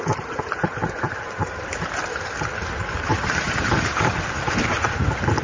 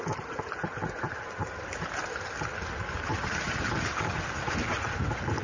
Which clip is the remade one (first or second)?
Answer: first